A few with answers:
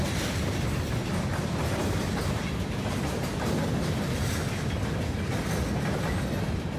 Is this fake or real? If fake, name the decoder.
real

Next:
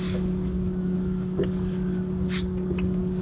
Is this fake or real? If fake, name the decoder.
fake, codec, DAC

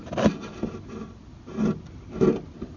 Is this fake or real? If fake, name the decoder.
real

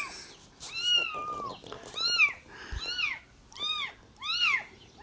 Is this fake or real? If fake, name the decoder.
real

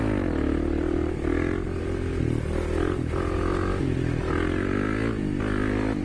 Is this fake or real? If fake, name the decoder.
real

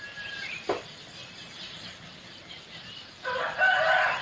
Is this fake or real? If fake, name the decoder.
real